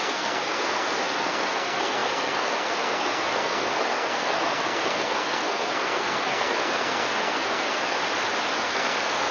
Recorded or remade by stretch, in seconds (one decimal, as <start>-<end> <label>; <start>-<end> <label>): 0.0-8.0 remade; 8.0-8.6 recorded; 8.6-9.3 remade

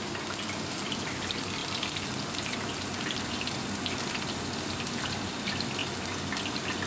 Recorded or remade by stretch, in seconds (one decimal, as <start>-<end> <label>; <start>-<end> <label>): 0.0-6.9 recorded

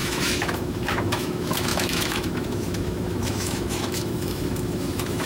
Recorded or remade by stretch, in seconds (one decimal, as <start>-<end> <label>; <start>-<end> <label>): 0.0-5.3 remade

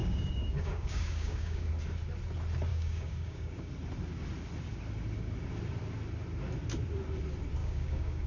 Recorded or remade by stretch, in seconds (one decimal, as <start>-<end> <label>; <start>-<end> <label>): 0.0-1.7 remade; 1.7-2.7 recorded; 2.7-3.7 remade; 3.7-7.6 recorded; 7.6-8.3 remade

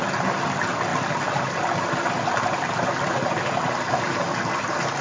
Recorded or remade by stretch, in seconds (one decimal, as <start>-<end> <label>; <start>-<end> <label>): 0.0-5.0 recorded

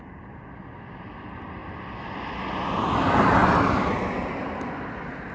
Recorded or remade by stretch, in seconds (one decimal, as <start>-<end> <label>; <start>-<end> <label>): 0.0-5.3 recorded

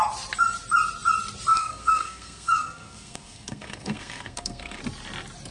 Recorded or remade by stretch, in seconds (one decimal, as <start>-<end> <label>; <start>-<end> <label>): 0.0-1.5 recorded; 1.5-4.8 remade; 4.8-5.5 recorded